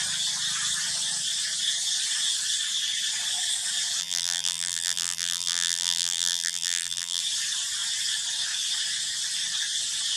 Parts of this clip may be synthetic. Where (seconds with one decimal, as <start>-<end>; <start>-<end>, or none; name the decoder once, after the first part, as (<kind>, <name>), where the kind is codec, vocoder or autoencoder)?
4.0-7.2 (vocoder, BigVGAN v2)